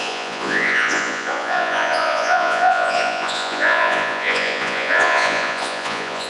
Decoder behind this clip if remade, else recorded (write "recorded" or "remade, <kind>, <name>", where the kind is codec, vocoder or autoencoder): remade, vocoder, Vocos